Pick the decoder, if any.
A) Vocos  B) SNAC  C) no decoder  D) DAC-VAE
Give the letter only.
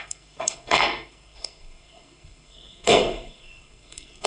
B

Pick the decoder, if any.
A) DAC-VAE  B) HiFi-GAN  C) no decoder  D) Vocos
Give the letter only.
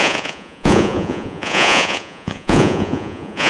D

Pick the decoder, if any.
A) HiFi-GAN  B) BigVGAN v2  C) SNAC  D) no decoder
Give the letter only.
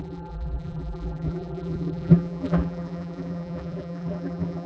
B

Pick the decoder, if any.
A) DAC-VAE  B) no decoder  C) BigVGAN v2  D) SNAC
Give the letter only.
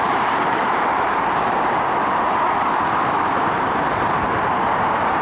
C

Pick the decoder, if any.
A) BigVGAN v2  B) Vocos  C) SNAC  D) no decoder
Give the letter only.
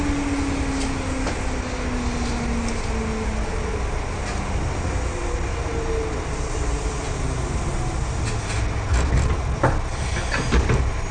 D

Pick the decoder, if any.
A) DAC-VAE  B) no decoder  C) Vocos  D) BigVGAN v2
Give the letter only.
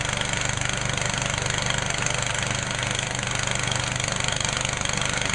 B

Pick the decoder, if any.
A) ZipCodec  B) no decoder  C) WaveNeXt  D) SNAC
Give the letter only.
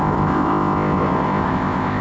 A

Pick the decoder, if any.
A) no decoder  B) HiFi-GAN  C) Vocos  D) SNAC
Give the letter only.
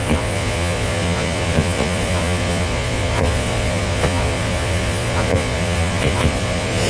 C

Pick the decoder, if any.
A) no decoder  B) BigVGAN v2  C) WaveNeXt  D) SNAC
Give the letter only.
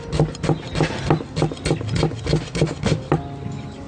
A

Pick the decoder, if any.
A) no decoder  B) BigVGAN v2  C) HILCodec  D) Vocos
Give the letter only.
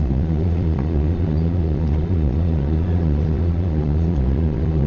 D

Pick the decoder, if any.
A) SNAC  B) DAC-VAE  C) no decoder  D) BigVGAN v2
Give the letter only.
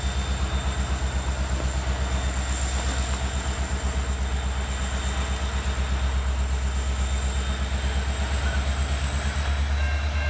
C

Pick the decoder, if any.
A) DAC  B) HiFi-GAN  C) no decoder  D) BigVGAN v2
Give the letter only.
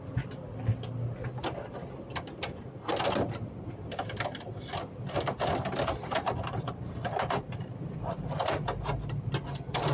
C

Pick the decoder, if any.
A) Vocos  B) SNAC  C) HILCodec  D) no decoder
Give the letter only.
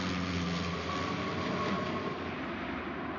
D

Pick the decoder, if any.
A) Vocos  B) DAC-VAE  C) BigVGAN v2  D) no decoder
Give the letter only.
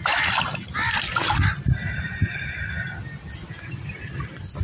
D